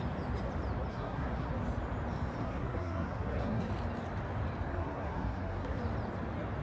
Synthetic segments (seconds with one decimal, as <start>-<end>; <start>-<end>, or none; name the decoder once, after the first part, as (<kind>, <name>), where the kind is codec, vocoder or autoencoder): 0.9-1.5 (codec, SNAC); 2.4-3.7; 4.7-5.8